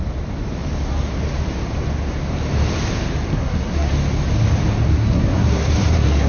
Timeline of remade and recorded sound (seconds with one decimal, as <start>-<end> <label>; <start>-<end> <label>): 0.0-3.3 recorded; 3.3-3.9 remade; 3.9-4.9 recorded; 4.9-6.3 remade